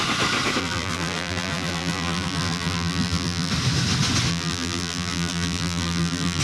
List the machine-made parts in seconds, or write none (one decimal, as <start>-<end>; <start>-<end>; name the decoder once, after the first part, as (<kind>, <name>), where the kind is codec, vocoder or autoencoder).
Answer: 0.6-3.5 (vocoder, BigVGAN v2); 4.3-6.4